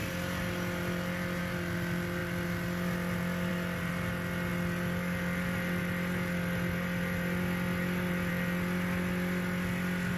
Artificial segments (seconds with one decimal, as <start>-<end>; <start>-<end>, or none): none